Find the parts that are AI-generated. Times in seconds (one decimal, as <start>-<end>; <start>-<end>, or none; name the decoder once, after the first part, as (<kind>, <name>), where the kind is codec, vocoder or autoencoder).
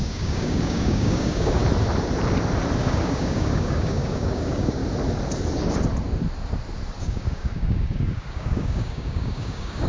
0.0-1.6 (codec, DAC); 2.8-4.8; 7.0-9.9